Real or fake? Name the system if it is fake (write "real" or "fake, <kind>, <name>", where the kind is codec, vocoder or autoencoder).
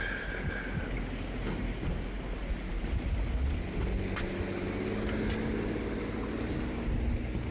real